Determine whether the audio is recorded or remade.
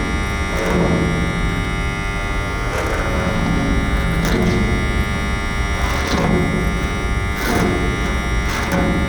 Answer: recorded